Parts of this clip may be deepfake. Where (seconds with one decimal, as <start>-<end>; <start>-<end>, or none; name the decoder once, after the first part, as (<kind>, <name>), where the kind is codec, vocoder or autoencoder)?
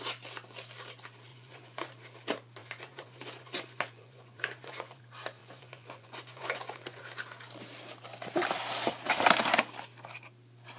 1.3-1.9 (vocoder, Vocos); 2.6-5.0; 5.4-7.0